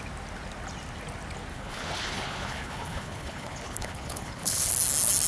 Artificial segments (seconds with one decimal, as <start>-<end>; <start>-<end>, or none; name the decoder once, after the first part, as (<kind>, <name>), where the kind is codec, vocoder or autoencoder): 1.5-4.7 (codec, HILCodec)

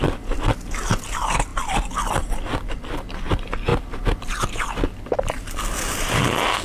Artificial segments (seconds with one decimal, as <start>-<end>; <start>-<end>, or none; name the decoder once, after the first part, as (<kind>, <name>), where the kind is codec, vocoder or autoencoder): none

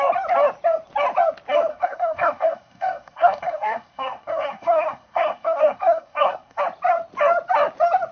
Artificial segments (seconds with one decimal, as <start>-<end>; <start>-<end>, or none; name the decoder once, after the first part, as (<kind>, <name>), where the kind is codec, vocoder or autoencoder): 1.7-6.6 (codec, SNAC)

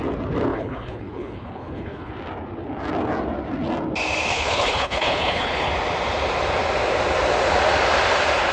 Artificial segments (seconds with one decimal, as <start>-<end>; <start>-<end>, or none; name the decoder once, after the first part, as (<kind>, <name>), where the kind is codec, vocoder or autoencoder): 0.5-2.1 (codec, HILCodec); 4.3-5.7

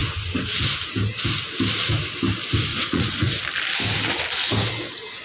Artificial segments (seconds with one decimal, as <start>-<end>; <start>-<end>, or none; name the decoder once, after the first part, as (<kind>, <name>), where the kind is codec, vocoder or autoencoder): 2.7-3.4 (vocoder, Vocos)